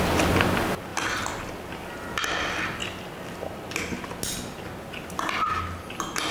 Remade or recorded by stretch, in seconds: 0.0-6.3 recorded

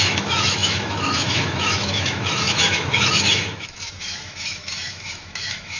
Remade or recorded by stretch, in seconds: 0.0-5.8 remade

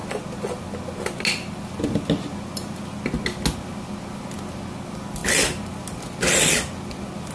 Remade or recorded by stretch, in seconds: 0.0-7.3 recorded

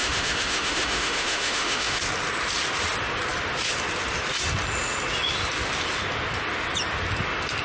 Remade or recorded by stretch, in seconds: 0.0-2.0 remade; 2.0-7.6 recorded

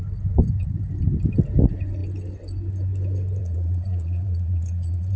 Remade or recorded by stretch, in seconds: 0.0-3.4 recorded; 3.4-5.2 remade

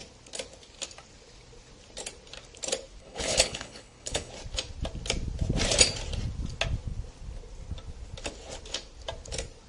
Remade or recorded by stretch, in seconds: 0.0-3.0 recorded; 3.0-4.3 remade; 4.3-9.7 recorded

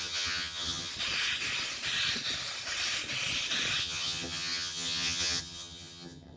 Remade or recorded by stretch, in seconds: 0.0-0.9 remade; 0.9-3.8 recorded; 3.8-6.4 remade

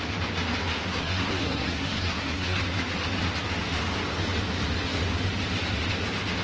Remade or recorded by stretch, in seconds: 0.0-0.9 recorded; 0.9-2.6 remade; 2.6-6.4 recorded